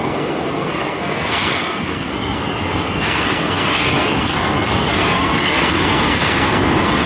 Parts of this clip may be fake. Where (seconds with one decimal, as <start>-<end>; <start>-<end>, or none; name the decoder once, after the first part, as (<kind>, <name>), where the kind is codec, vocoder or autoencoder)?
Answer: 0.0-7.1 (codec, SNAC)